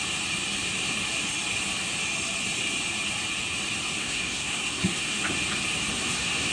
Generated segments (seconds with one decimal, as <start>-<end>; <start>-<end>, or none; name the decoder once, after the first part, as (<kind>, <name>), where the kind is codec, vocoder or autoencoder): 4.0-5.2 (codec, SNAC); 5.9-6.5